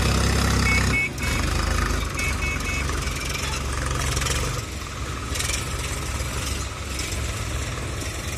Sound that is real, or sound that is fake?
real